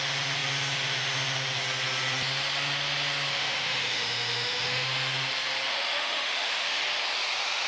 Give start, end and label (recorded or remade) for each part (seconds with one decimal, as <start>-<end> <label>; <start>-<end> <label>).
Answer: 0.0-3.3 recorded; 3.3-4.9 remade; 4.9-5.7 recorded; 5.7-6.8 remade; 6.8-7.7 recorded